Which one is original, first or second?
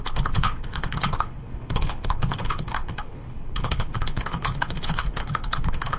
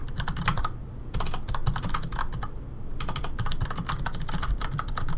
second